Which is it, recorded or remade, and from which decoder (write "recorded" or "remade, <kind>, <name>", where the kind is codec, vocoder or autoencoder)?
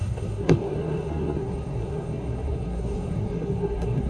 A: remade, codec, SNAC